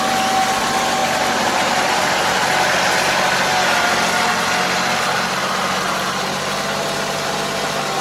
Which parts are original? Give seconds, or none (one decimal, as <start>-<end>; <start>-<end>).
0.0-1.0; 1.7-8.0